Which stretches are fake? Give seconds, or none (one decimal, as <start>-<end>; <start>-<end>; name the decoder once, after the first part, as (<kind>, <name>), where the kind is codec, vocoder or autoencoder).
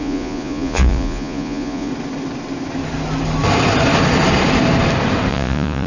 0.0-1.9 (vocoder, Vocos); 5.3-5.9